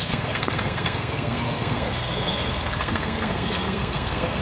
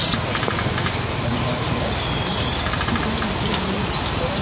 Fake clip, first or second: first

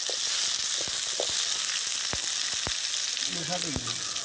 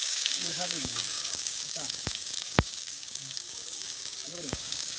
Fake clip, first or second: second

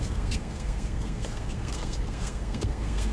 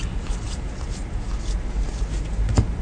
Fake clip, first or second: first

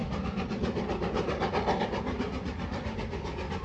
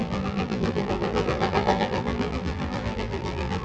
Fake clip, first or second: second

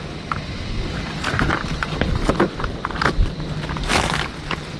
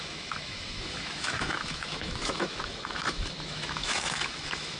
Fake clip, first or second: second